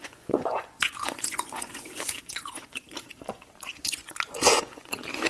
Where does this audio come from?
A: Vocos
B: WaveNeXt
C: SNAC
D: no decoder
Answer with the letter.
A